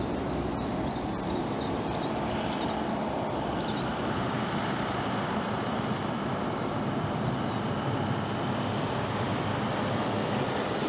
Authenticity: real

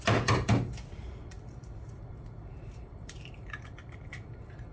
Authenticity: fake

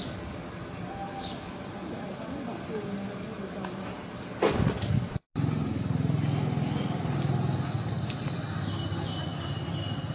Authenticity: real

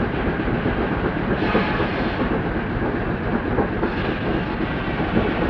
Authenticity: real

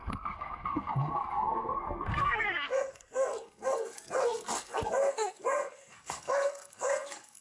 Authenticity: fake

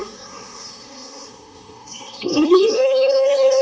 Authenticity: fake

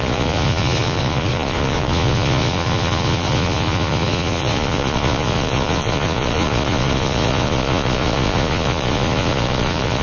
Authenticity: fake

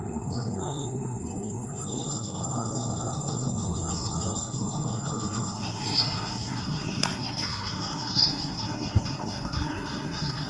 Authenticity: fake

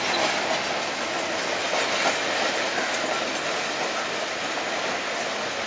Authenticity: real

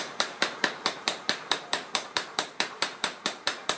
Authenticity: fake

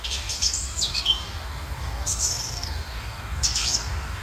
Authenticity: fake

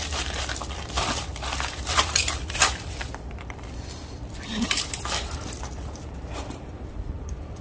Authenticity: fake